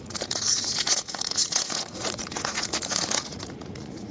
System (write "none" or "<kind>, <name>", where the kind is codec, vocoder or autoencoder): vocoder, Vocos